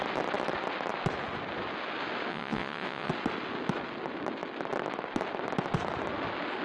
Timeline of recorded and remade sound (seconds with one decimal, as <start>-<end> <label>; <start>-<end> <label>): 0.0-2.3 recorded; 2.3-3.1 remade; 3.1-6.6 recorded